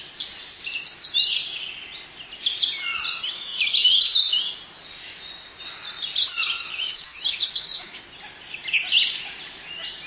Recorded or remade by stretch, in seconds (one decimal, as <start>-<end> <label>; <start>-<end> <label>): 0.0-3.3 recorded; 3.3-4.5 remade; 4.5-6.7 recorded; 6.7-8.0 remade; 8.0-10.1 recorded